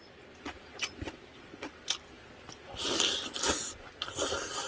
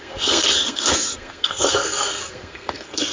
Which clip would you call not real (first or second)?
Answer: second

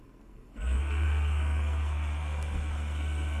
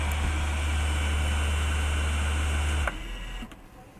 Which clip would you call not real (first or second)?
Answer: first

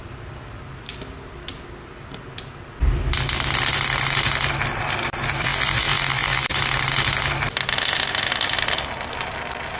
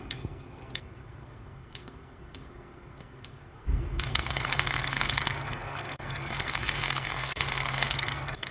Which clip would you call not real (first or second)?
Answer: second